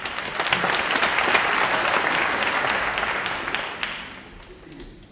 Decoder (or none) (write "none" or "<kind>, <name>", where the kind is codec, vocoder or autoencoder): none